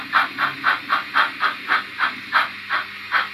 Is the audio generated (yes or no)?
no